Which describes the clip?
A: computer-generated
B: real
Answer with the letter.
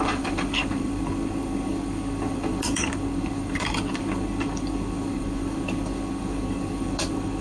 A